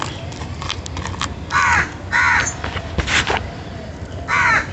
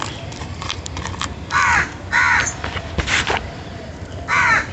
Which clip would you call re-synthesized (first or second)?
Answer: second